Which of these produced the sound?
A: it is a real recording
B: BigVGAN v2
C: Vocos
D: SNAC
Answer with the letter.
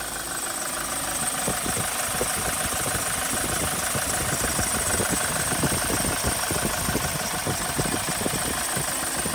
A